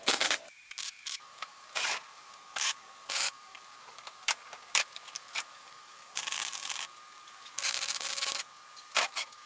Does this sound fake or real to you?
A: fake